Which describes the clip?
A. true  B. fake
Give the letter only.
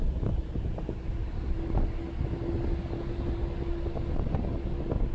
A